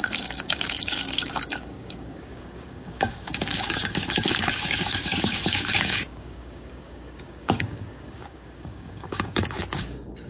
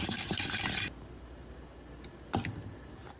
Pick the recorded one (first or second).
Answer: second